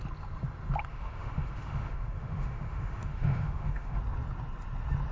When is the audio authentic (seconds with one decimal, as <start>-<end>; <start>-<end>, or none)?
0.0-0.9; 4.0-5.1